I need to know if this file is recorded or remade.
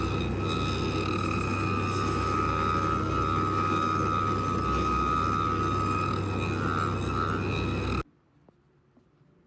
recorded